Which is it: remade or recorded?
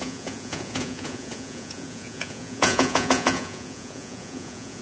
remade